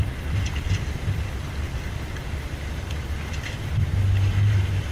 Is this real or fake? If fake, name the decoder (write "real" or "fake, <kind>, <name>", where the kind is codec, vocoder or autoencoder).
real